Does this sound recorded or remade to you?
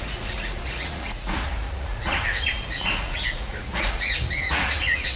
remade